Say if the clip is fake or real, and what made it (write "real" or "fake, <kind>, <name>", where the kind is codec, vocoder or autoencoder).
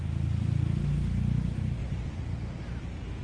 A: real